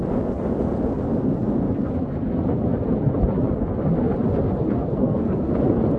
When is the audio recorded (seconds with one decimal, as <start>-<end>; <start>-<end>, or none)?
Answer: 0.0-4.8; 5.5-6.0